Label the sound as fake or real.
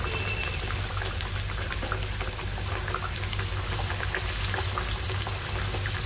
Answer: real